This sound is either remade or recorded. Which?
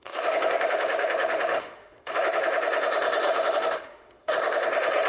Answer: remade